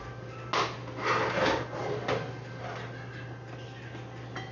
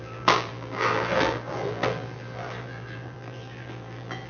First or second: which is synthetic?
second